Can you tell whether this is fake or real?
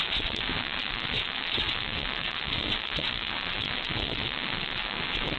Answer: fake